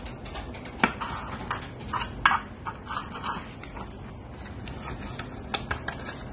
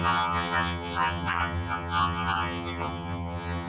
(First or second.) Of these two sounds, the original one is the first